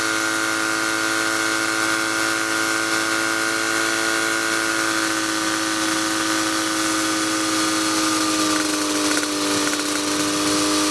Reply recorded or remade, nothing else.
recorded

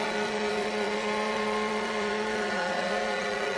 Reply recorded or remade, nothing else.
remade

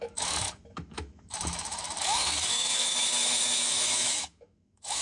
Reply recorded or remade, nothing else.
remade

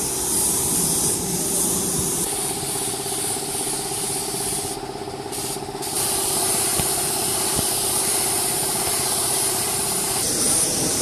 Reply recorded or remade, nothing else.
remade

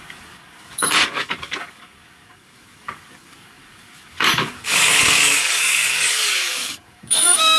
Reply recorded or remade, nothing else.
remade